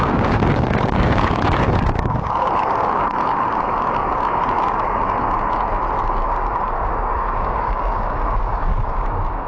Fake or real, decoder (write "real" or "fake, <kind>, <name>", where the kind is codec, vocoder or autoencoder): fake, codec, DAC